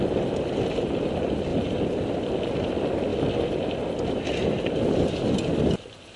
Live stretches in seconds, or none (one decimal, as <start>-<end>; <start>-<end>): 0.0-1.5; 2.2-3.1; 4.7-6.2